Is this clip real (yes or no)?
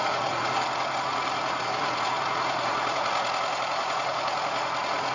no